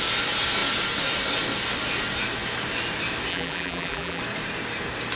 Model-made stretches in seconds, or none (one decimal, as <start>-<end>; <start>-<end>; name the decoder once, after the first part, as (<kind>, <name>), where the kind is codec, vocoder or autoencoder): 3.3-4.2 (vocoder, BigVGAN v2)